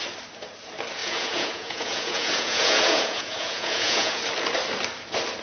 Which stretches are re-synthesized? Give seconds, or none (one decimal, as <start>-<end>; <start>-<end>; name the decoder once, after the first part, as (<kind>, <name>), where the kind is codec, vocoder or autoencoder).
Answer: 1.0-4.2 (vocoder, Vocos)